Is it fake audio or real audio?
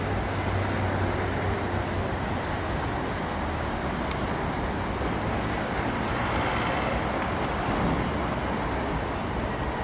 real